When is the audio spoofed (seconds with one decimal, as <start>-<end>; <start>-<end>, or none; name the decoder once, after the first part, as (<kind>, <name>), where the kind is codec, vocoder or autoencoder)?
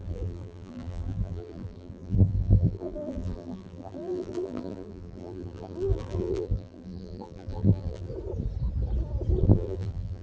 0.0-8.1 (vocoder, BigVGAN v2); 9.4-10.2